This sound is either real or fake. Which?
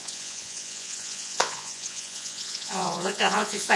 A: fake